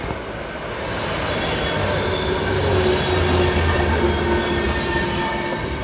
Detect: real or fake real